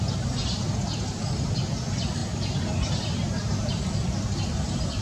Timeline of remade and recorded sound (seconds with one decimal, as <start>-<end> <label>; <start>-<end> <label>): 0.0-0.4 recorded; 0.4-1.6 remade; 1.6-2.2 recorded; 2.2-3.9 remade; 3.9-5.0 recorded